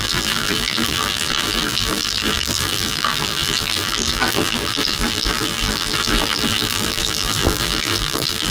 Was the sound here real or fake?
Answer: fake